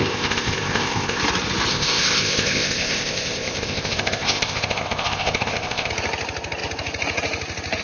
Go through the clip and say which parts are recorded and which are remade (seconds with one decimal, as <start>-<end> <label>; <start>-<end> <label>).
0.0-1.2 remade; 1.2-1.7 recorded; 1.7-5.9 remade; 5.9-7.8 recorded